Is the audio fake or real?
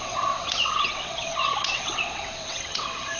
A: fake